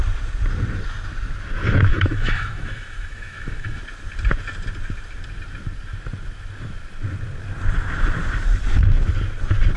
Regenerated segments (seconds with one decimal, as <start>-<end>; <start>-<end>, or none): 1.9-3.8